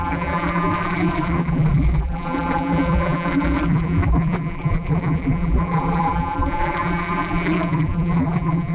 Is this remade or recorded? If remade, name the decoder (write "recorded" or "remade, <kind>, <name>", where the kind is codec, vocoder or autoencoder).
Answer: remade, vocoder, BigVGAN v2